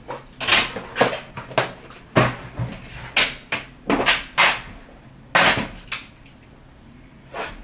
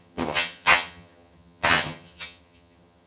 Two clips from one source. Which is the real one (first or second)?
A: first